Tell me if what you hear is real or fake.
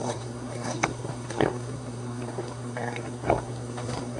fake